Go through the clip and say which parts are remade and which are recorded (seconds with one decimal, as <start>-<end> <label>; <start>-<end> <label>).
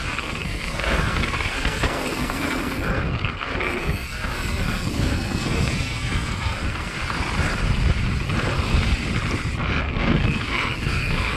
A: 0.0-7.0 remade; 7.0-9.8 recorded; 9.8-11.4 remade